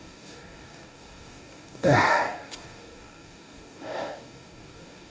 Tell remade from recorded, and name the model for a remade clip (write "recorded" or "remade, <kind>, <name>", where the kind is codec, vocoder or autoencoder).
remade, codec, DAC